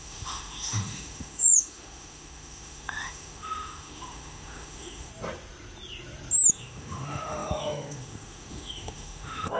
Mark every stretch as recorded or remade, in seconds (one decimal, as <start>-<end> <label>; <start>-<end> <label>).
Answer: 0.0-5.1 remade; 5.1-6.5 recorded; 6.5-9.6 remade